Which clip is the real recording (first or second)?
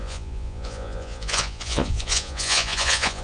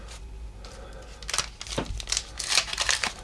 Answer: second